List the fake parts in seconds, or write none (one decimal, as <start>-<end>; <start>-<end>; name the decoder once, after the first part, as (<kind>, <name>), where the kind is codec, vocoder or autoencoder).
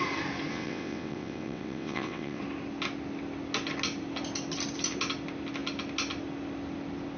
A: 0.5-2.4 (vocoder, WaveNeXt)